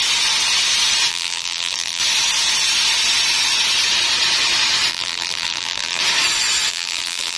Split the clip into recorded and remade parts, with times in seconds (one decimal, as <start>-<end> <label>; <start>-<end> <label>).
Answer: 0.0-1.1 recorded; 1.1-2.0 remade; 2.0-4.9 recorded; 4.9-6.0 remade; 6.0-6.7 recorded; 6.7-7.4 remade